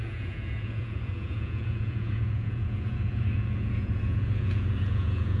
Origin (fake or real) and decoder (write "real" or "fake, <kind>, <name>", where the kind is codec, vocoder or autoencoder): fake, vocoder, Vocos